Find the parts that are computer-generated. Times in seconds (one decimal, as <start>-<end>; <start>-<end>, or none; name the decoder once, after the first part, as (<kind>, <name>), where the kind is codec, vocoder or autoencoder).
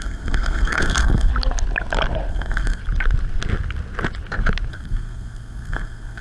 0.0-1.3 (codec, SNAC); 2.3-2.8; 4.7-6.2